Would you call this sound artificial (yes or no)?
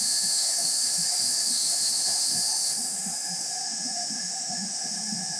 yes